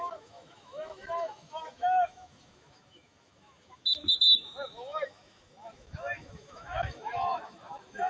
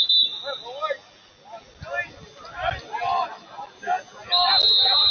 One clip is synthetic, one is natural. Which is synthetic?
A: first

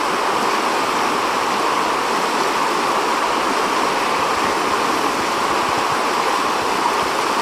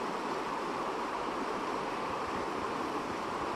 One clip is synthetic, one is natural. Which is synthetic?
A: second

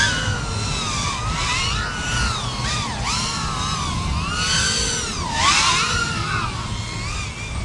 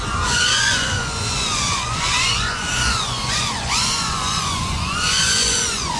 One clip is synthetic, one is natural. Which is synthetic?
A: second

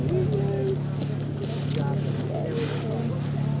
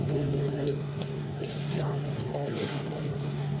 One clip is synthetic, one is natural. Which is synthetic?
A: second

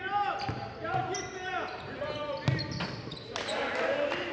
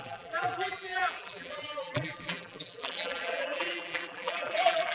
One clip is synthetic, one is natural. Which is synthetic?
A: second